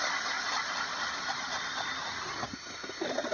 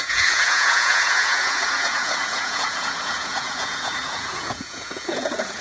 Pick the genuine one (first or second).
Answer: first